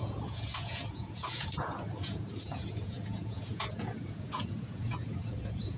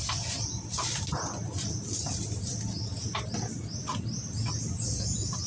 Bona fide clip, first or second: second